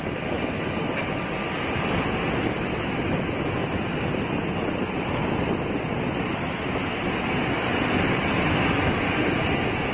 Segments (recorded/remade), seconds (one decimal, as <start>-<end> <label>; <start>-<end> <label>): 0.0-9.9 recorded